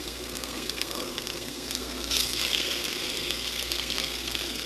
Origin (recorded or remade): remade